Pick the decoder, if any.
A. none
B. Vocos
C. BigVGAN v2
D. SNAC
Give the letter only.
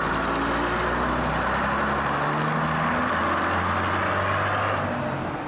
A